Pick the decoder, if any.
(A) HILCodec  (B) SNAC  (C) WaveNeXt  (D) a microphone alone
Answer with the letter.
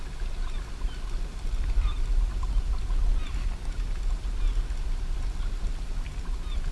D